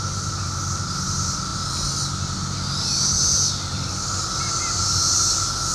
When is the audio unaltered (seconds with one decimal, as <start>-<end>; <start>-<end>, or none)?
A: 0.0-5.7